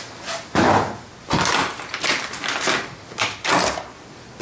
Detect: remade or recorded recorded